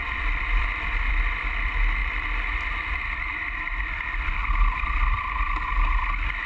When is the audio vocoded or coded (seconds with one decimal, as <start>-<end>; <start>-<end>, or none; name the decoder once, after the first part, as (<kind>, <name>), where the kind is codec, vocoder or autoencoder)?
0.0-1.1 (vocoder, BigVGAN v2); 2.0-5.7